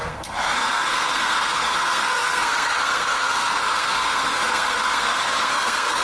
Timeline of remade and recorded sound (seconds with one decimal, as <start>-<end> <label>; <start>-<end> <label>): 0.0-6.0 remade